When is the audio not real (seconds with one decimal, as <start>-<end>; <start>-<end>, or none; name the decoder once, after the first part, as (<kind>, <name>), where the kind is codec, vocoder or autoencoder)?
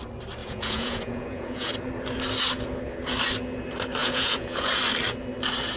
0.4-1.7 (vocoder, Vocos); 4.0-4.8